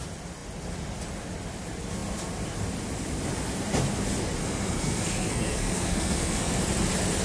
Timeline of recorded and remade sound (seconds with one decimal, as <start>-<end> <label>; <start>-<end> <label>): 0.0-4.4 recorded; 4.4-6.6 remade; 6.6-7.2 recorded